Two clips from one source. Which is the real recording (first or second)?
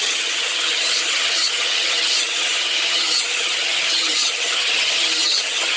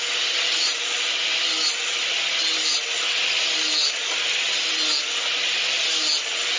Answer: second